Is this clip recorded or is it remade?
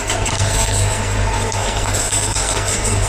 remade